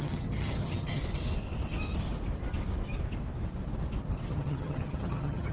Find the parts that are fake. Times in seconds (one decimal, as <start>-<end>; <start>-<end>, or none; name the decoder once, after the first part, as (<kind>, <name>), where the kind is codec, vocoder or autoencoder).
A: 0.0-1.0 (vocoder, HiFi-GAN); 4.3-5.5